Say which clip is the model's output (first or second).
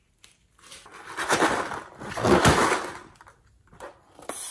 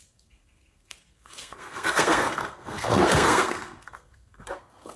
second